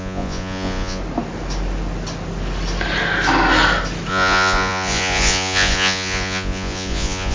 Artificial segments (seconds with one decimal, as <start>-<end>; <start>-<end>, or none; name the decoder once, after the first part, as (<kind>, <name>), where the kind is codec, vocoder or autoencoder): 0.0-1.0 (vocoder, Vocos); 4.1-7.3